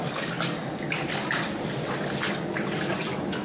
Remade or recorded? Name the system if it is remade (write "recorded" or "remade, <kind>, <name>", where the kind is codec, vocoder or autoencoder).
recorded